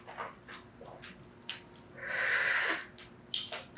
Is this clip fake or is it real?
real